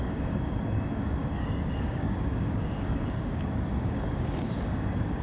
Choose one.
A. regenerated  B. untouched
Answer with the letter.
A